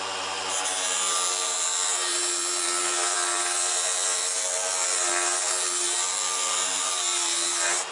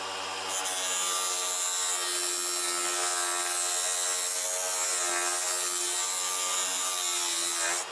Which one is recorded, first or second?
second